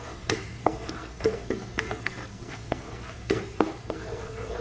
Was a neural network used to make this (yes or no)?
yes